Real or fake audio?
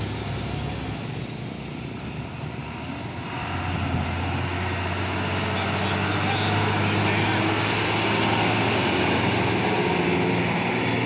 real